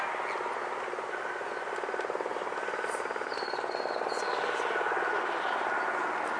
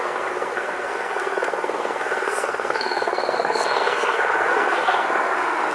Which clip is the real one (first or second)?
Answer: first